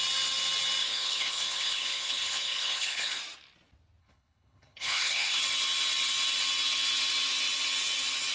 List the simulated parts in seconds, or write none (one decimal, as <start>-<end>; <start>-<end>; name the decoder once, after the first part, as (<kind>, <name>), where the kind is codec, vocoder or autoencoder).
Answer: 0.8-3.2 (codec, HILCodec); 4.0-5.4